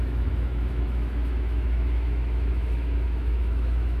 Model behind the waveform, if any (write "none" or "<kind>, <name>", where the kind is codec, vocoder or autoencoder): autoencoder, DAC-VAE